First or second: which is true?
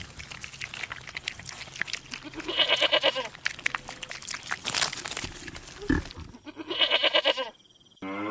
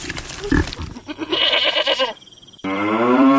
first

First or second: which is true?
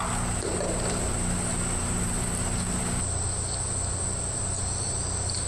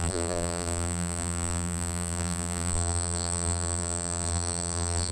first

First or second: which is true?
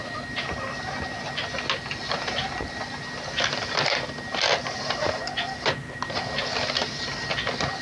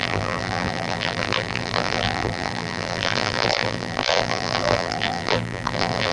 first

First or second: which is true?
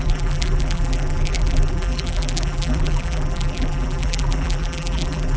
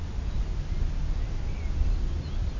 second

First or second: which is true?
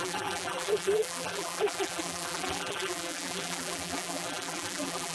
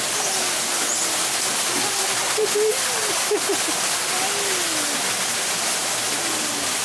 second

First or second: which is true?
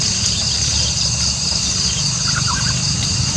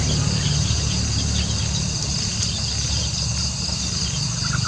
second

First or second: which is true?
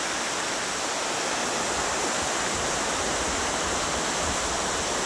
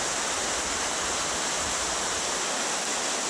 second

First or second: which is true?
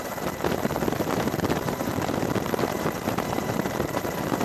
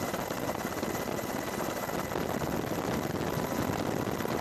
second